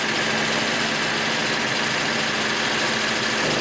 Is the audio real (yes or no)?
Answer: yes